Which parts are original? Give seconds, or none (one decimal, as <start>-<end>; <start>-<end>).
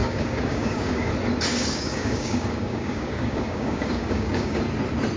1.1-1.5; 4.6-5.2